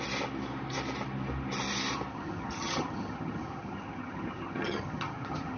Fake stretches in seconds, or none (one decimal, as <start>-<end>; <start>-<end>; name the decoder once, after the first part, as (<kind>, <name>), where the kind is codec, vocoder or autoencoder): 2.1-5.6 (vocoder, HiFi-GAN)